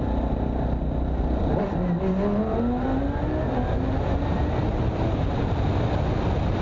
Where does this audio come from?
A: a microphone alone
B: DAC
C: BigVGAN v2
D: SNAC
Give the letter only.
A